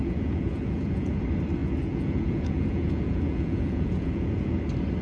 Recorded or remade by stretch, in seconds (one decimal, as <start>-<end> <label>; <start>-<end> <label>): 0.0-1.2 remade; 1.2-1.6 recorded; 1.6-4.6 remade; 4.6-5.0 recorded